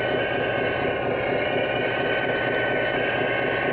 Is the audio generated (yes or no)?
no